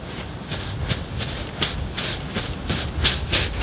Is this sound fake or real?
real